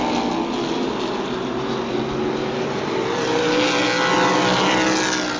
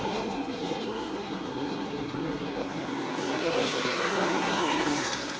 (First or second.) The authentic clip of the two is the first